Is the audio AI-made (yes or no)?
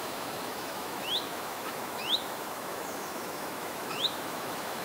yes